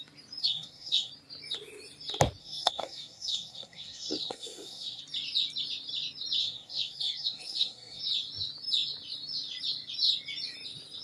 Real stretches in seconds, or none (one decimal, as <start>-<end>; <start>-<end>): 0.0-0.4; 1.1-2.4; 5.0-6.4; 8.0-11.0